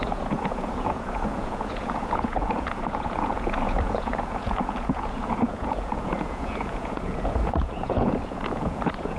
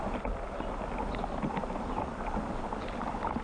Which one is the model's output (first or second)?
first